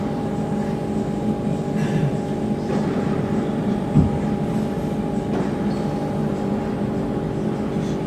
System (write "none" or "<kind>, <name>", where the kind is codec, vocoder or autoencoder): none